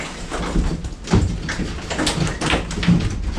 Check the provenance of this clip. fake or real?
real